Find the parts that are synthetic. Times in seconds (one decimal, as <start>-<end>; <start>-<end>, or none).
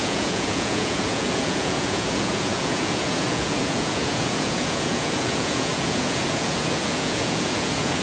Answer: 0.0-8.0